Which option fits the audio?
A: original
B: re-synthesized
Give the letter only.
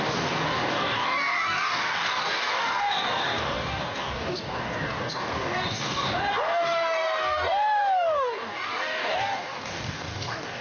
B